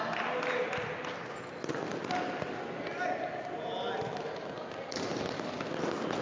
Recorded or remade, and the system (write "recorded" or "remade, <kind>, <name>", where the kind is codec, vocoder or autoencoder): recorded